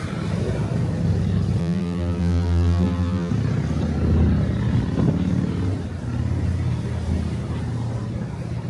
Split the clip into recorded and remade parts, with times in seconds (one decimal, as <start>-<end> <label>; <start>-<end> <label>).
0.0-1.6 recorded; 1.6-3.3 remade; 3.3-8.7 recorded